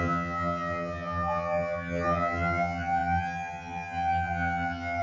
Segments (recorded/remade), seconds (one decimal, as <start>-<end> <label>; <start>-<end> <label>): 0.0-5.0 remade